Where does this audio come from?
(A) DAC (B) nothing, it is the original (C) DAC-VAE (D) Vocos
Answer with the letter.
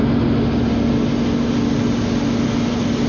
B